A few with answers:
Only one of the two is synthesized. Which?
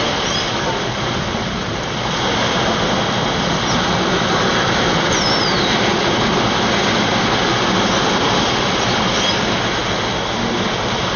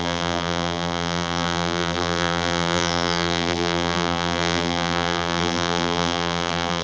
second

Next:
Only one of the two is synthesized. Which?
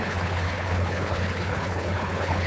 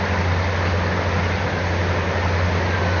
first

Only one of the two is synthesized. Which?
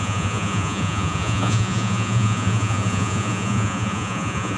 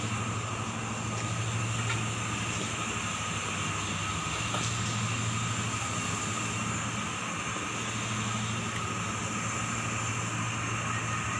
first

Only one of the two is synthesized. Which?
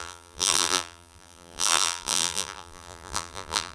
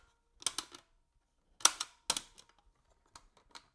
first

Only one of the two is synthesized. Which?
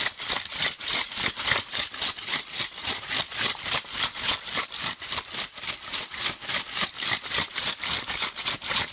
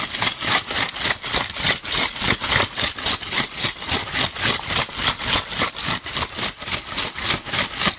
first